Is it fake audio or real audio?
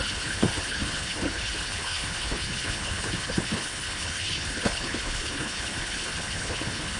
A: fake